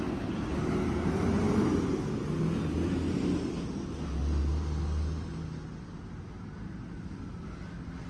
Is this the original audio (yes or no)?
yes